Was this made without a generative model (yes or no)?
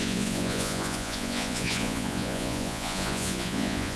no